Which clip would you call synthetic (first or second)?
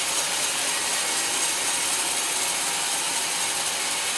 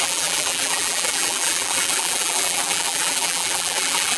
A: second